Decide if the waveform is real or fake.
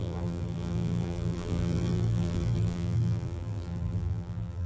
fake